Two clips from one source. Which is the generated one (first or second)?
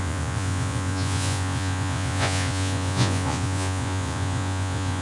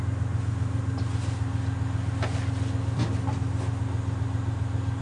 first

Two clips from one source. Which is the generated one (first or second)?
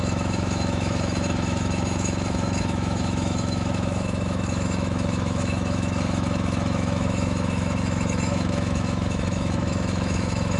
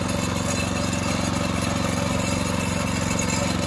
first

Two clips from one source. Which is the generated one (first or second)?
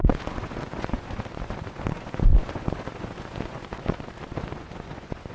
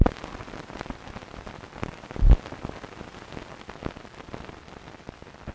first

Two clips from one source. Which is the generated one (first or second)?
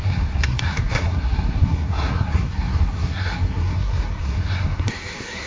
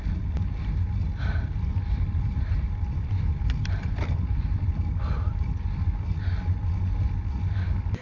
first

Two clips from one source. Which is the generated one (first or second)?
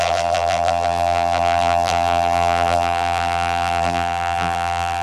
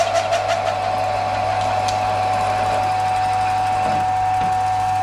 first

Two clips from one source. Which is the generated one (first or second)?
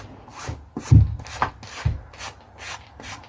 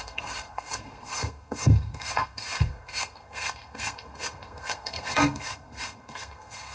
second